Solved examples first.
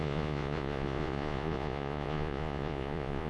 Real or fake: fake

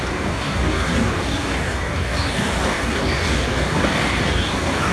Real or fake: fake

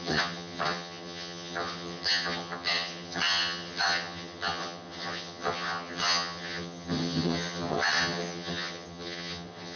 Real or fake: fake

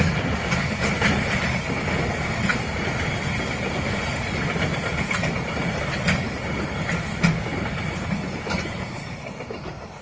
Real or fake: real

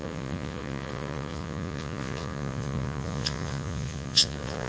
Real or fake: fake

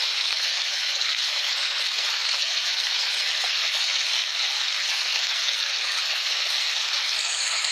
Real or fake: fake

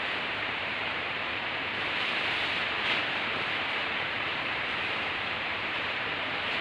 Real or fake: fake